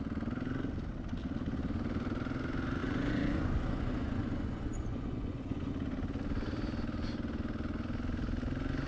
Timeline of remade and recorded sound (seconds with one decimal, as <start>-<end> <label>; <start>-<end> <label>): 0.0-2.8 recorded; 2.8-5.7 remade; 5.7-8.9 recorded